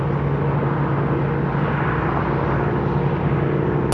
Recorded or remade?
recorded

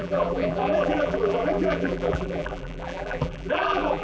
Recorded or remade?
remade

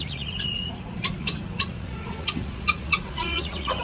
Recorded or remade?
remade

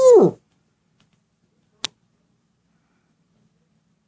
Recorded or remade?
recorded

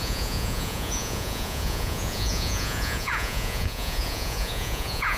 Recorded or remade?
remade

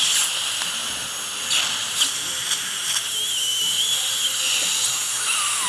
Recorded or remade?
recorded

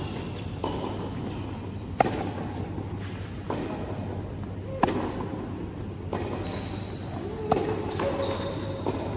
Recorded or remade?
recorded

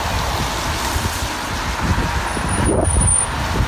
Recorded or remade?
recorded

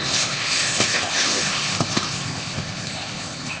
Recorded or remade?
remade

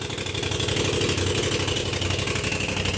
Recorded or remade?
recorded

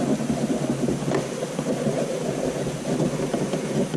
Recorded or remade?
recorded